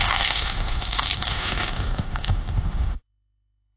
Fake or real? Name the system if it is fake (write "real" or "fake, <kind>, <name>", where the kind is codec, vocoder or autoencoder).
fake, autoencoder, DAC-VAE